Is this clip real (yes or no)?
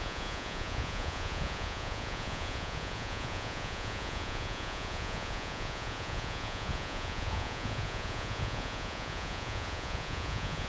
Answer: no